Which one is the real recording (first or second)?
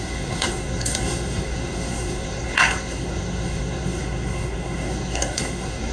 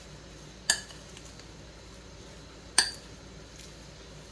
second